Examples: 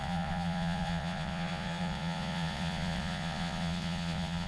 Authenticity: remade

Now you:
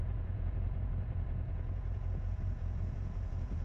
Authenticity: remade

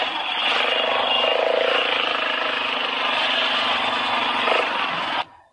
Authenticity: recorded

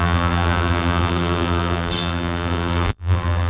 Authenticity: remade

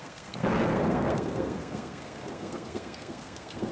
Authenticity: remade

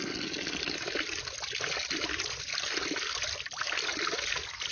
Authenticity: recorded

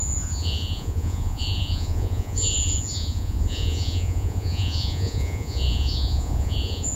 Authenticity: remade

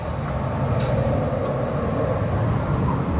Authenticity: recorded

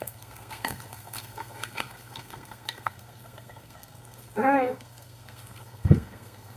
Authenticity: remade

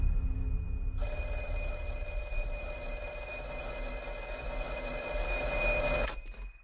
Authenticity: recorded